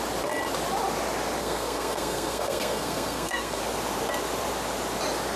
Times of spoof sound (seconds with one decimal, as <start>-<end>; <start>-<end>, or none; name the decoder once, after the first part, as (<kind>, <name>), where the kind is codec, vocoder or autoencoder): 1.4-3.6 (codec, SNAC)